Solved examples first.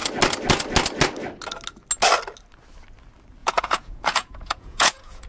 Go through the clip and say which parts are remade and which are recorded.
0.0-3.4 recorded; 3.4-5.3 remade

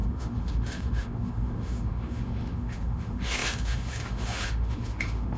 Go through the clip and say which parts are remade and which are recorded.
0.0-5.4 remade

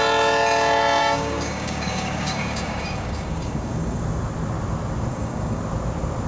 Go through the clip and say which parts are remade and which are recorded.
0.0-1.0 recorded; 1.0-4.0 remade; 4.0-5.1 recorded; 5.1-5.6 remade; 5.6-6.3 recorded